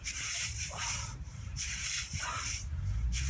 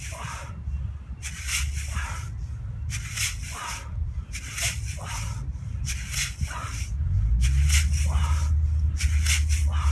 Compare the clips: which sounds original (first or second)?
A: second